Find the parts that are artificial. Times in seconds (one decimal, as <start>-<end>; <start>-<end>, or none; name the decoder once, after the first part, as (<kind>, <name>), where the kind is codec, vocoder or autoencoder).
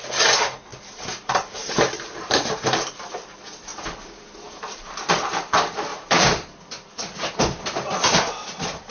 0.7-2.9 (vocoder, BigVGAN v2); 3.7-4.9; 5.9-7.4